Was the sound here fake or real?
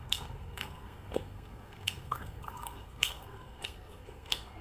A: fake